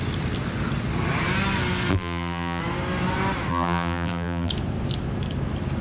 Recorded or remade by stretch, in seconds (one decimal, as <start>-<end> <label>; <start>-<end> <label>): 0.0-1.9 recorded; 1.9-2.6 remade; 2.6-3.5 recorded; 3.5-4.5 remade; 4.5-5.8 recorded